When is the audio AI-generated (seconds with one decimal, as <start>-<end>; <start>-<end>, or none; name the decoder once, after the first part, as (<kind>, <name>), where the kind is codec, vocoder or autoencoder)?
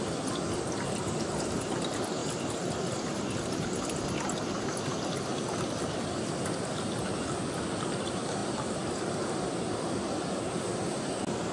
none